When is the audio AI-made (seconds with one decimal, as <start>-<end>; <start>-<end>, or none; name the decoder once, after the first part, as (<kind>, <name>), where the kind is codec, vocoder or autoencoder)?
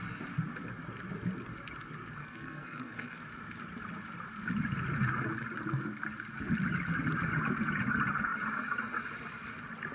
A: 2.2-3.2 (codec, SNAC)